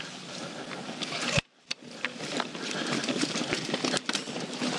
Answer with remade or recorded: recorded